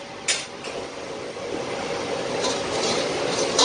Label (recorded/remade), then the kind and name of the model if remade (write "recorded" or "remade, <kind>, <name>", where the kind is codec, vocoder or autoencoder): recorded